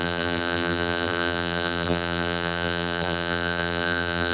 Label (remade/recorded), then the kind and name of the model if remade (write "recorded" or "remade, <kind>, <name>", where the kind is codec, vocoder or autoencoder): remade, vocoder, BigVGAN v2